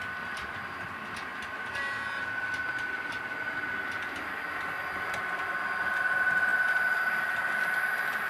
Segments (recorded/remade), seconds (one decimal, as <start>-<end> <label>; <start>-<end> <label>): 0.0-8.3 recorded